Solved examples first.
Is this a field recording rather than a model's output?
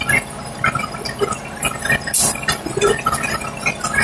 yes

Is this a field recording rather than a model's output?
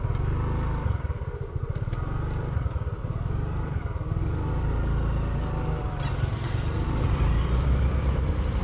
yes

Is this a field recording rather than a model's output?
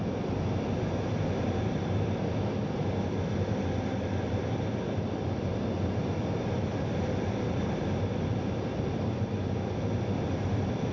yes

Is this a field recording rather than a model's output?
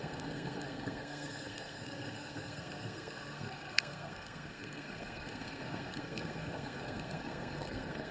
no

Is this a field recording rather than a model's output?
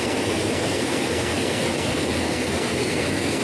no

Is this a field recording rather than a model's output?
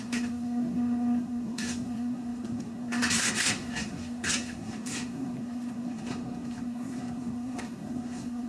no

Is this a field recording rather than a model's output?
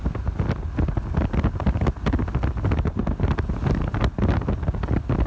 yes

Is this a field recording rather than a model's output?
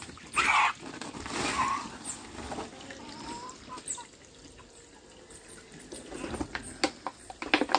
yes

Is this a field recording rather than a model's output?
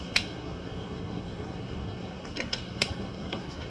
no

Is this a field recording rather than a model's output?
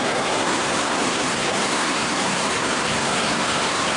no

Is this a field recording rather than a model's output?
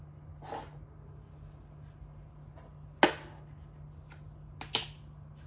yes